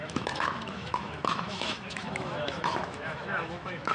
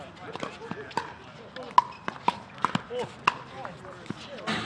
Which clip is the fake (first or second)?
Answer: first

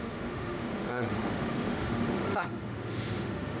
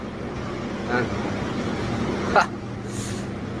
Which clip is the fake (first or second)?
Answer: first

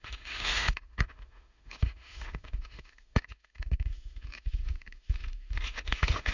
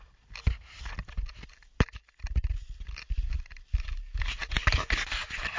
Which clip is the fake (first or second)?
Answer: first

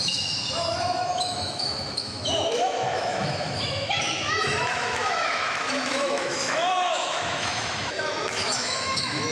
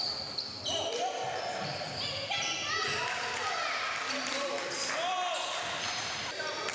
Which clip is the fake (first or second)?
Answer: first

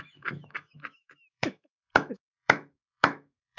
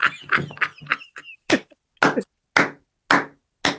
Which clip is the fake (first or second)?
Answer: first